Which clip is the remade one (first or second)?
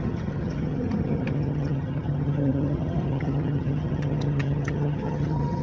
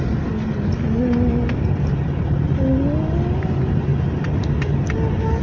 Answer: first